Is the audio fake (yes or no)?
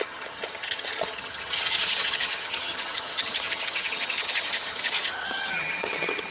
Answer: yes